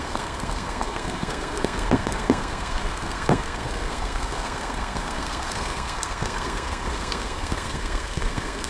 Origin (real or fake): fake